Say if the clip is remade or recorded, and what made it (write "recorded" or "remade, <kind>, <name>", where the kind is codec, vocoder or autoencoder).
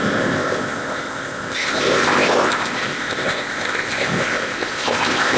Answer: remade, codec, ZipCodec